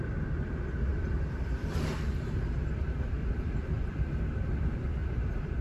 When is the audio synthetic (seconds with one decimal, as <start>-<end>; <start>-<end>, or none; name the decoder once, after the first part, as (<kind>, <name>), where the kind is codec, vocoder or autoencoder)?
0.9-1.9 (vocoder, BigVGAN v2); 3.2-4.2; 5.0-5.6